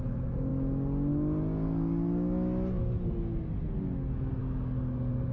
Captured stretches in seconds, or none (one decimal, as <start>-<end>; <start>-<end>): 0.0-5.3